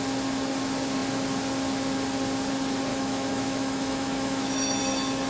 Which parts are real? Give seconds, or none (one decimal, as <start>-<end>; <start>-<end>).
0.0-2.9; 4.8-5.3